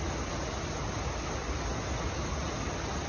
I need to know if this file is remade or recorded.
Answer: recorded